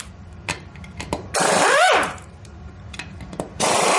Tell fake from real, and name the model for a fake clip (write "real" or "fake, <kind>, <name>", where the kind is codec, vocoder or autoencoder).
fake, vocoder, BigVGAN v2